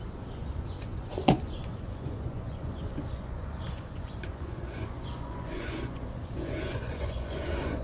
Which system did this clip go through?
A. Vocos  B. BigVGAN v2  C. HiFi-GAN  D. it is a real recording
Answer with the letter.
A